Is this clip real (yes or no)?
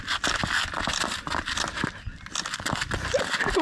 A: yes